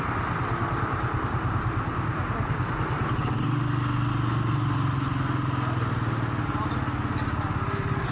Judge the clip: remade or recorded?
recorded